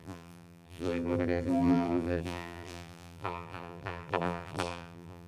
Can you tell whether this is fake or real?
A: fake